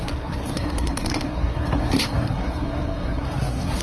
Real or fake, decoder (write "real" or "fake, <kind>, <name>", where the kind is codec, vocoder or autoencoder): fake, codec, SNAC